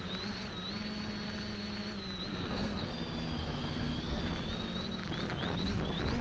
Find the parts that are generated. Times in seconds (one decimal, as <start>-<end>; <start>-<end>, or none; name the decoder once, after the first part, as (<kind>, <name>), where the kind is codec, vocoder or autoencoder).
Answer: 2.3-2.9 (codec, SNAC); 3.4-4.2